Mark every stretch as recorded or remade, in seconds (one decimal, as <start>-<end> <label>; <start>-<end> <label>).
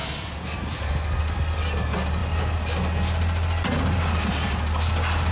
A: 0.0-5.3 recorded